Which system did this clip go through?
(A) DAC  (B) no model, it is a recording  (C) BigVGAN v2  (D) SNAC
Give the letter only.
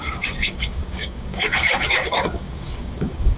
A